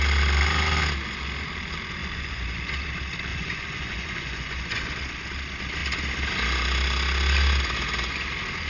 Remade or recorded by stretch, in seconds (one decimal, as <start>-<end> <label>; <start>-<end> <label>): 0.0-2.0 recorded; 2.0-2.7 remade; 2.7-3.3 recorded; 3.3-4.9 remade; 4.9-8.7 recorded